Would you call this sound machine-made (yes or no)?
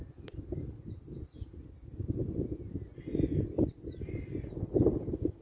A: no